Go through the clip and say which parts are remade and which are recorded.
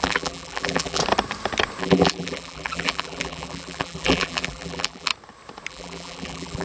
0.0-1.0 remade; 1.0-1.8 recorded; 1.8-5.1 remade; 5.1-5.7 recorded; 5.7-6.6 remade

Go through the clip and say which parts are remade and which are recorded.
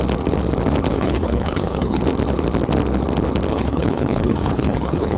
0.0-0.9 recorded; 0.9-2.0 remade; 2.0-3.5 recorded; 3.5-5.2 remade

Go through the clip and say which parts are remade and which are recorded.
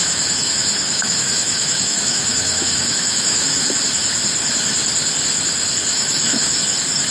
0.0-3.8 remade; 3.8-5.9 recorded; 5.9-6.6 remade; 6.6-7.1 recorded